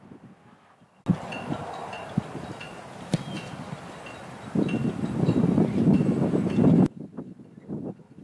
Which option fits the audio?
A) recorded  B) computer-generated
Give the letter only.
A